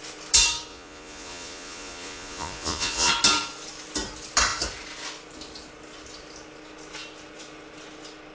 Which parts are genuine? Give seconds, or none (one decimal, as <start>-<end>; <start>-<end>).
0.0-0.7; 3.1-8.3